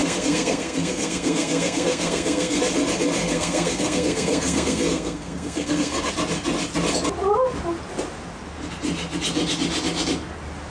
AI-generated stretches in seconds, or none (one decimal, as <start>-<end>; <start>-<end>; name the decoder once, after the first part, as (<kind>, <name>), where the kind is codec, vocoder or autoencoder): 0.0-2.6 (codec, SNAC); 3.2-6.1